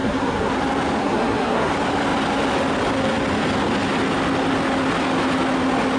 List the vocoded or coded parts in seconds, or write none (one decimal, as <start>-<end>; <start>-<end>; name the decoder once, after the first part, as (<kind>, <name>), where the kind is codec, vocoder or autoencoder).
0.0-0.5 (codec, SNAC); 1.0-1.7